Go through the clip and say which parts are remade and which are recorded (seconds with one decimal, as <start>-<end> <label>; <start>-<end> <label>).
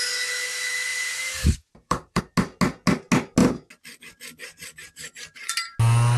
0.0-0.9 recorded; 0.9-2.2 remade; 2.2-4.4 recorded; 4.4-5.5 remade; 5.5-6.2 recorded